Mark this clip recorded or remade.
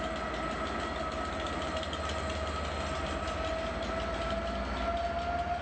recorded